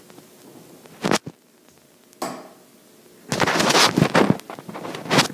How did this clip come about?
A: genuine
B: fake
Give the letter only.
A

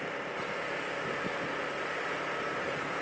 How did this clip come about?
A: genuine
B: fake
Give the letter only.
A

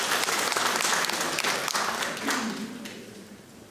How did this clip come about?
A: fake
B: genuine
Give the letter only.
B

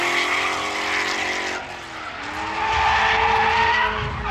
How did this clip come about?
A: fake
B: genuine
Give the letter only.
B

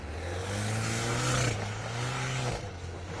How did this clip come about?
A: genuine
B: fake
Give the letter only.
A